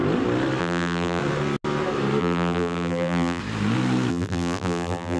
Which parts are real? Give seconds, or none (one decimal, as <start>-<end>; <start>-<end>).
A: 0.0-0.6; 1.2-2.2; 3.4-4.1